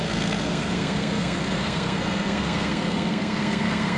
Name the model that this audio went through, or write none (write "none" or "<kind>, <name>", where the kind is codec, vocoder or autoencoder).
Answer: codec, SNAC